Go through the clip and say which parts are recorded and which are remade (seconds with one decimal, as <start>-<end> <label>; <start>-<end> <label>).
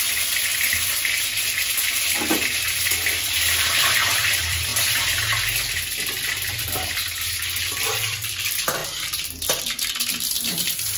0.0-4.7 remade; 4.7-6.1 recorded; 6.1-8.8 remade; 8.8-9.6 recorded; 9.6-11.0 remade